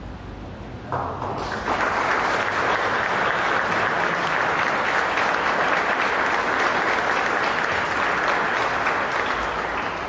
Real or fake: real